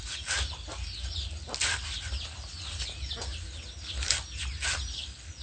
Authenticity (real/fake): real